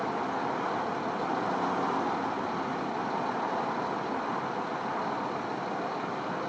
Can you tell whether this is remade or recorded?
recorded